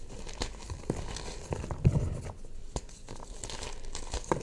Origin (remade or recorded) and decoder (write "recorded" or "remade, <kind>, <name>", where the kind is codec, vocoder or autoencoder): recorded